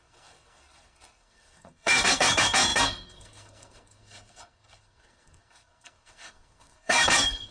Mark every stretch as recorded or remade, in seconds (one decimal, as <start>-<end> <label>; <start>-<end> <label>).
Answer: 0.0-7.5 remade